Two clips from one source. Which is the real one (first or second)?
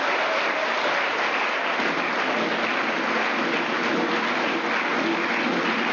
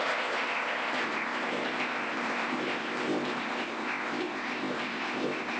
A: first